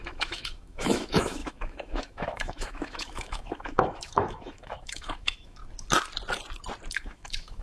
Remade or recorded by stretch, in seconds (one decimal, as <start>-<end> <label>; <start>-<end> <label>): 0.0-5.6 remade; 5.6-6.9 recorded; 6.9-7.6 remade